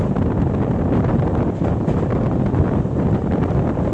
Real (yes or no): yes